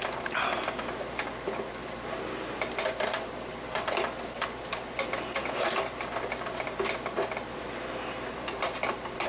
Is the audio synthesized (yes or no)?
no